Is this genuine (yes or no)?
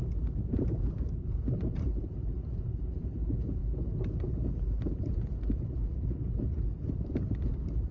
no